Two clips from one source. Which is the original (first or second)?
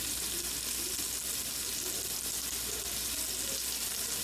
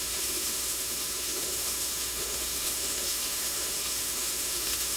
first